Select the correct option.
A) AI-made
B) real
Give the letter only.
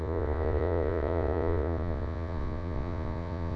A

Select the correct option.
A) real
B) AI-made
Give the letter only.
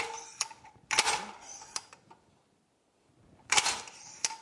A